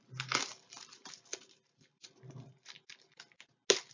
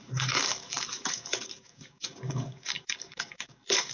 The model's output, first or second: second